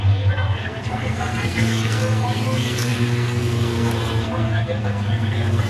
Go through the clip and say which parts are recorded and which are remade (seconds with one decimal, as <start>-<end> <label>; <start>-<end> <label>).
0.0-5.7 remade